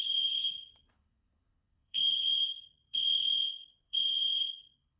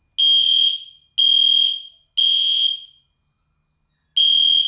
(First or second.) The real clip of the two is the second